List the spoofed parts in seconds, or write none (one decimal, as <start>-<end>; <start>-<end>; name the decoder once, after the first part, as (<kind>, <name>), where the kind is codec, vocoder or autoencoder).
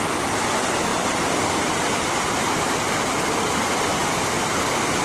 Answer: 0.9-3.4 (vocoder, BigVGAN v2); 4.0-4.5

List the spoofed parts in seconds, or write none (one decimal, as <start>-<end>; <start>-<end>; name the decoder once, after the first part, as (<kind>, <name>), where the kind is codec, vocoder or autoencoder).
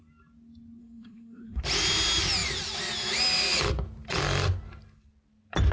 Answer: 0.8-1.6 (codec, SNAC)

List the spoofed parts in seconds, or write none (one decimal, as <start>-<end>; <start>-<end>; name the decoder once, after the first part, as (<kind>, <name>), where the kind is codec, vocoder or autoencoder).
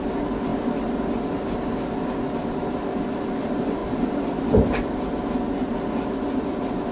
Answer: none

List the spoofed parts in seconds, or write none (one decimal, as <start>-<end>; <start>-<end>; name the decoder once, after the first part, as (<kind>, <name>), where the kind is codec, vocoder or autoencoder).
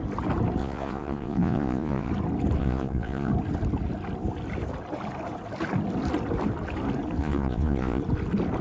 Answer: 0.6-2.1 (vocoder, Vocos); 2.6-3.3; 7.2-8.0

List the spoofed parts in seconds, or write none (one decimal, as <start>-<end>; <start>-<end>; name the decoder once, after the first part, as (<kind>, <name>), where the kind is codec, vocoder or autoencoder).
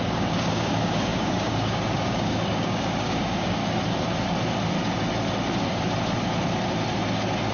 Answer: 0.0-3.6 (codec, DAC)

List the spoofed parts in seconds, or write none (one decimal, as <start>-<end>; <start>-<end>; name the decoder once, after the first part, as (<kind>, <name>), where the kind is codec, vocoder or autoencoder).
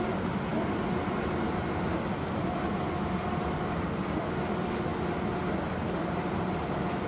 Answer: none